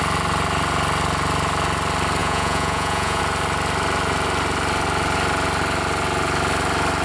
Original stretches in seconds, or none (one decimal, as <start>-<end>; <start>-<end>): 0.0-2.2; 3.2-7.0